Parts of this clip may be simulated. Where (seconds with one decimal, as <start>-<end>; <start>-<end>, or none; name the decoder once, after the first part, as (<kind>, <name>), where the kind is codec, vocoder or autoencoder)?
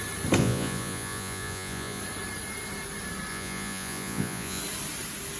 0.4-2.0 (vocoder, Vocos); 3.3-4.6